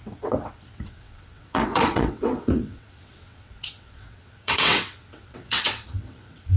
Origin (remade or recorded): remade